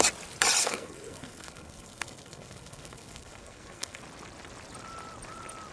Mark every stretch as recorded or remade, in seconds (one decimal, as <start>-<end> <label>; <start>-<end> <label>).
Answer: 0.0-0.6 recorded; 0.6-4.0 remade; 4.0-5.7 recorded